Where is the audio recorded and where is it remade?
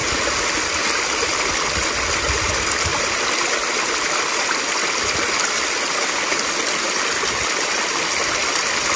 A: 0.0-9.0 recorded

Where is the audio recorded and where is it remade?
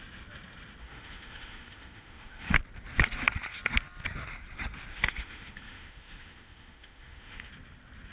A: 0.0-0.8 recorded; 0.8-2.6 remade; 2.6-4.9 recorded; 4.9-7.5 remade; 7.5-8.1 recorded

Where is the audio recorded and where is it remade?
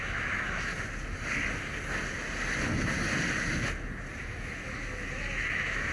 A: 0.0-0.7 remade; 0.7-4.2 recorded; 4.2-5.9 remade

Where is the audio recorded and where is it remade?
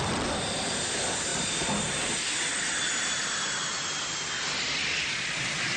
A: 0.0-5.8 recorded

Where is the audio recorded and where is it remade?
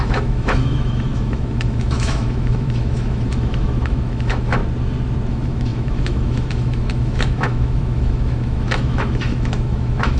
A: 0.0-4.6 remade; 4.6-5.3 recorded; 5.3-10.2 remade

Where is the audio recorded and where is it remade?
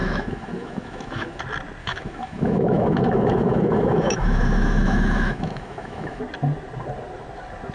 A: 0.0-1.4 remade; 1.4-1.8 recorded; 1.8-6.2 remade; 6.2-7.7 recorded